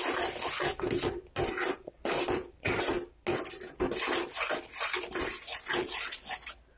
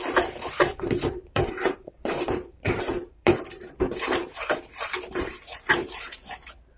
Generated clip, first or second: second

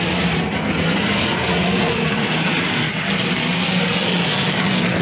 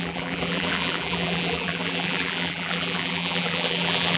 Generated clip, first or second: second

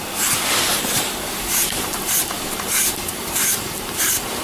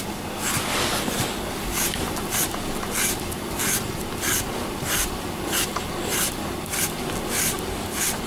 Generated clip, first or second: first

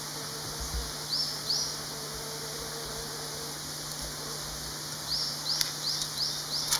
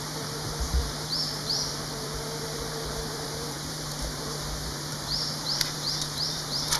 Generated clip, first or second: second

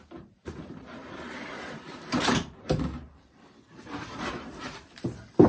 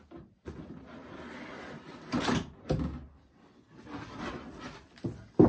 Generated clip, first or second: first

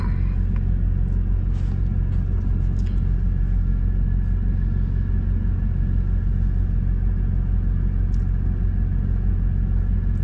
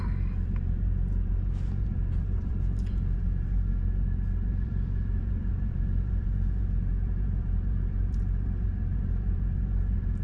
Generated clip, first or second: second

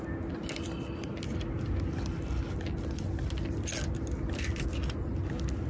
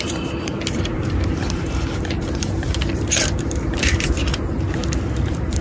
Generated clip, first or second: second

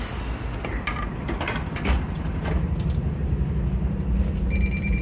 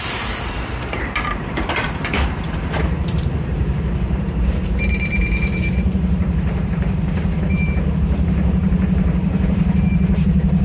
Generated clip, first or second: second